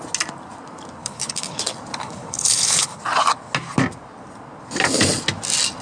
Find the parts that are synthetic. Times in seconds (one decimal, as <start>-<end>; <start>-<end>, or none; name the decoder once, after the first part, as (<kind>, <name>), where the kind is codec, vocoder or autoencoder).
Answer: 1.0-1.6 (codec, HILCodec); 2.0-3.0